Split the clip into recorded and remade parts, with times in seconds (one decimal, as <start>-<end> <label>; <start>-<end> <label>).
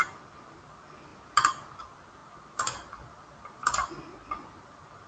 0.0-5.1 recorded